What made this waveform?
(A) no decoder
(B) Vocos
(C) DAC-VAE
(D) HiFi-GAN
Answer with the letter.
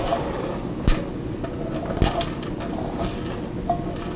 A